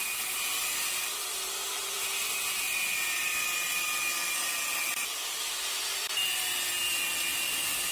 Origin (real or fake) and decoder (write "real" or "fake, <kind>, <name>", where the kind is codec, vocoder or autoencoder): real